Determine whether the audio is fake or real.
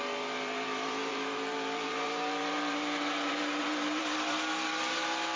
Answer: fake